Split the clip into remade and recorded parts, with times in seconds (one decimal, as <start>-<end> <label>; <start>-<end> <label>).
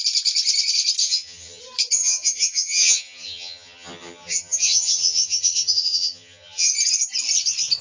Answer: 0.0-1.0 recorded; 1.0-1.6 remade; 1.6-2.0 recorded; 2.0-6.7 remade; 6.7-7.8 recorded